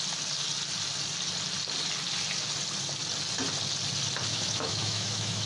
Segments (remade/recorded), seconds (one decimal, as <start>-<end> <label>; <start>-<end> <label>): 0.0-4.3 recorded; 4.3-5.5 remade